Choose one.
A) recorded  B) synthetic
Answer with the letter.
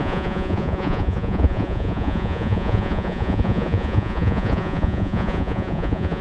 B